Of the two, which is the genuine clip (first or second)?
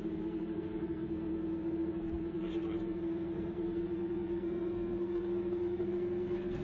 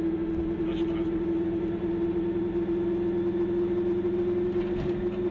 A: second